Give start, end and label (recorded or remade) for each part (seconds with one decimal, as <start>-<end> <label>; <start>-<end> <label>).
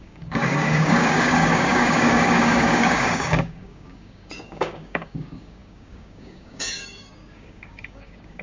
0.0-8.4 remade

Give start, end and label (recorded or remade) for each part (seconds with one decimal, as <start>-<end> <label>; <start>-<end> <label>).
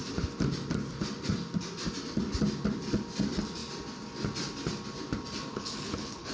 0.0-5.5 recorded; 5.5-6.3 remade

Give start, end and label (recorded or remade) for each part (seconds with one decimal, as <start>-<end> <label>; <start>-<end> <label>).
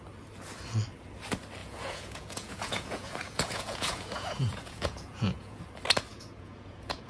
0.0-1.6 recorded; 1.6-5.6 remade; 5.6-6.1 recorded; 6.1-7.1 remade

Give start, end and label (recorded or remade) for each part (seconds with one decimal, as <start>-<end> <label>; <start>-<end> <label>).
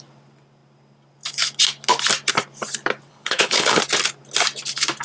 0.0-3.1 recorded; 3.1-3.8 remade; 3.8-5.0 recorded